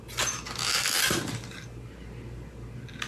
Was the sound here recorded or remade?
recorded